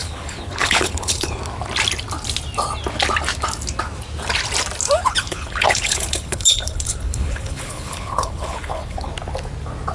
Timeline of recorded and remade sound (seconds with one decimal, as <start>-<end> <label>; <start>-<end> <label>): 0.0-1.4 remade; 1.4-5.0 recorded; 5.0-9.1 remade; 9.1-9.9 recorded